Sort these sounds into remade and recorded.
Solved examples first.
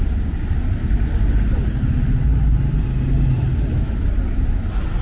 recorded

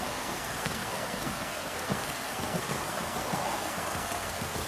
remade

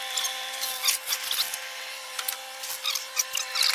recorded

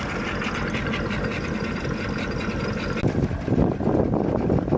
recorded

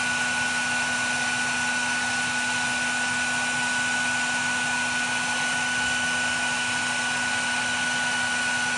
recorded